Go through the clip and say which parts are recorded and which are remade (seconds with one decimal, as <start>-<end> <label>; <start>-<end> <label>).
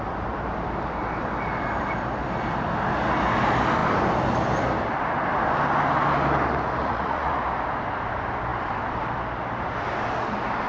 0.0-6.8 recorded; 6.8-7.4 remade; 7.4-10.7 recorded